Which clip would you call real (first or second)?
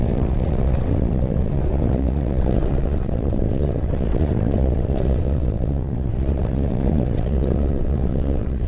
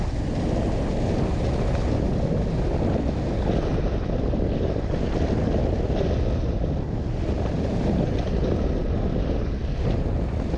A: second